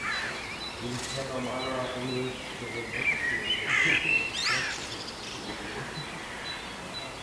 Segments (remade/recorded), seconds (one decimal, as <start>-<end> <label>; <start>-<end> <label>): 0.0-3.0 recorded; 3.0-7.2 remade